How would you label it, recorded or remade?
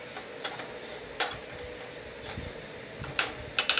recorded